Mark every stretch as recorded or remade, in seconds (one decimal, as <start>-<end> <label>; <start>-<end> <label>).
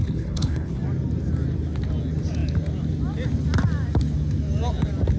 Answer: 0.0-0.8 remade; 0.8-5.2 recorded